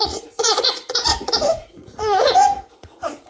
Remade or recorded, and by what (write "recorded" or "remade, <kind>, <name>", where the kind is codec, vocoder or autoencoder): remade, vocoder, Vocos